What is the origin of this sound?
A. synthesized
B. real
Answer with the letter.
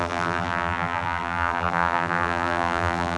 A